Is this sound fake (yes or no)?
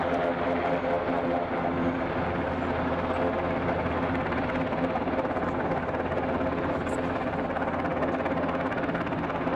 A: no